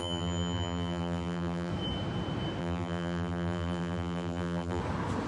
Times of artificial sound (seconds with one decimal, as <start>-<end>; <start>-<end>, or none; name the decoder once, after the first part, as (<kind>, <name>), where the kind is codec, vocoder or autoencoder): 0.0-1.7 (vocoder, BigVGAN v2); 2.6-4.8